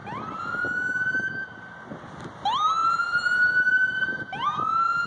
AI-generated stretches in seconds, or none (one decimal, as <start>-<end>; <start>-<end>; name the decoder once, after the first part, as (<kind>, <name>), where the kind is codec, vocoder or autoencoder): none